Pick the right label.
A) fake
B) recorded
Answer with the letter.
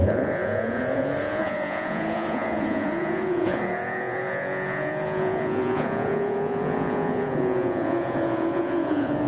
A